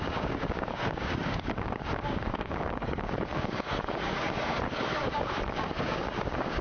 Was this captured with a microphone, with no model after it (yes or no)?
no